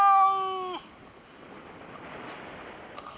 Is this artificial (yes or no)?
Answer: no